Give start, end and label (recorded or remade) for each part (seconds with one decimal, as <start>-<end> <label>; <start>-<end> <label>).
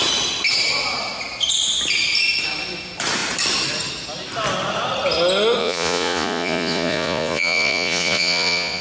0.0-5.6 recorded; 5.6-8.8 remade